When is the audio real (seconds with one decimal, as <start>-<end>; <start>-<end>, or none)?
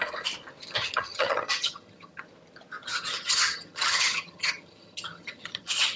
0.0-0.8; 2.2-2.8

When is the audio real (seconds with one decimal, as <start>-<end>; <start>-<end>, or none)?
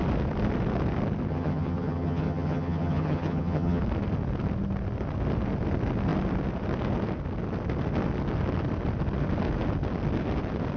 0.0-1.3; 3.8-10.8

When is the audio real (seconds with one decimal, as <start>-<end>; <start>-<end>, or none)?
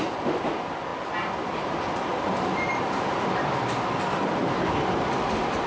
0.0-5.7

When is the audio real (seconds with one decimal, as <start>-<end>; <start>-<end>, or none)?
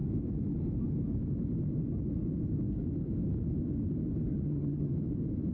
0.0-4.3; 4.9-5.5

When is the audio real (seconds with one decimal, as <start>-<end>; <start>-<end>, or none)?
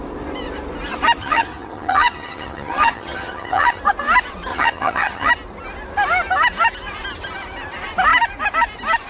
0.0-1.2; 3.8-4.5; 5.3-9.1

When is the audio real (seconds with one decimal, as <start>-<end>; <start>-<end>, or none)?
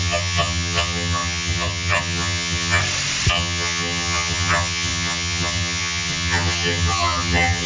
2.8-3.3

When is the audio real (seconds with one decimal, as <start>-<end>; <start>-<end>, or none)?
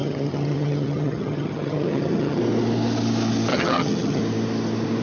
2.4-3.5; 4.2-5.0